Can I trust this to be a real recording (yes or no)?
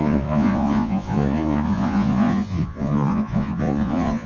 no